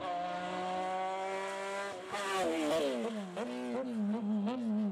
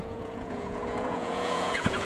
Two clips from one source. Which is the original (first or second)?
first